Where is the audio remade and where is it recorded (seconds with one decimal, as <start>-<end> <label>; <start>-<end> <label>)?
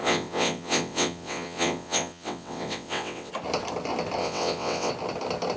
0.0-3.3 remade; 3.3-4.2 recorded; 4.2-4.9 remade; 4.9-5.6 recorded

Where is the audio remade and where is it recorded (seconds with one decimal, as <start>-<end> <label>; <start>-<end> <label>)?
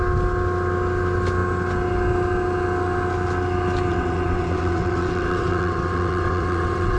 0.0-3.9 recorded; 3.9-7.0 remade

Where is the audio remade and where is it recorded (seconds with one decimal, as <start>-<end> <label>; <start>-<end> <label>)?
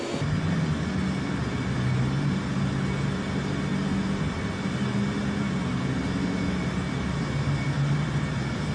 0.0-8.7 recorded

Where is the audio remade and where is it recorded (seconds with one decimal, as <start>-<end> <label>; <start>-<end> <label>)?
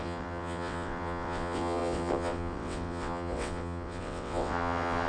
0.0-5.1 remade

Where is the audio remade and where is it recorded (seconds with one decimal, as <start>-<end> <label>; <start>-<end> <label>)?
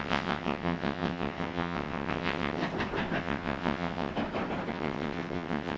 0.0-2.6 remade; 2.6-3.2 recorded; 3.2-4.1 remade; 4.1-4.7 recorded; 4.7-5.8 remade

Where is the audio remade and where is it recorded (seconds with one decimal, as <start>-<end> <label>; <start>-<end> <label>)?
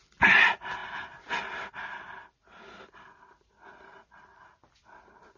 0.0-5.4 recorded